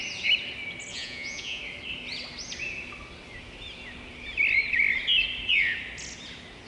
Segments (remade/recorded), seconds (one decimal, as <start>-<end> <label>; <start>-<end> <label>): 0.0-0.9 recorded; 0.9-1.6 remade; 1.6-6.7 recorded